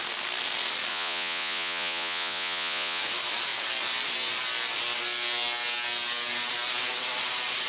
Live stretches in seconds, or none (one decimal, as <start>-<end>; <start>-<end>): 0.0-0.9; 3.0-7.7